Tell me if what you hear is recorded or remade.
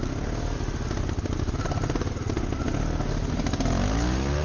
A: recorded